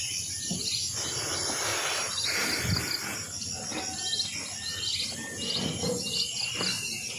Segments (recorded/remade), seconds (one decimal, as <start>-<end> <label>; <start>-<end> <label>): 0.0-1.7 recorded; 1.7-2.8 remade; 2.8-7.2 recorded